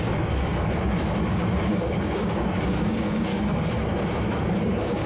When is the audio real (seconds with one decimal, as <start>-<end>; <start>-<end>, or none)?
0.5-1.7; 3.3-4.6

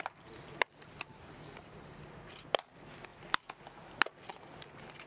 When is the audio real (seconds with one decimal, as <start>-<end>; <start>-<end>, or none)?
0.0-5.1

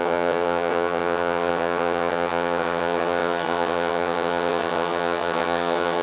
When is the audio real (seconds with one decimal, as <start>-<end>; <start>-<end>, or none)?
none

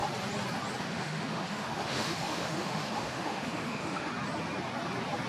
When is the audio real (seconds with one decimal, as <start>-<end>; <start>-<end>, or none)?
0.0-0.8; 4.1-5.3

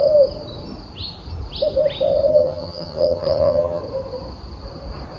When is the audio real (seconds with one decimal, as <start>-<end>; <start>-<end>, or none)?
0.0-2.3; 3.8-5.2

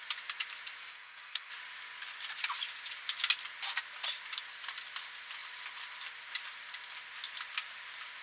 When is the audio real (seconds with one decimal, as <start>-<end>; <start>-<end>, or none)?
0.0-0.9; 1.5-8.2